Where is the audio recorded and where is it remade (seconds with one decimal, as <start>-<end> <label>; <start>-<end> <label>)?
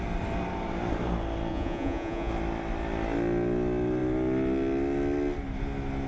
0.0-1.5 recorded; 1.5-2.3 remade; 2.3-6.1 recorded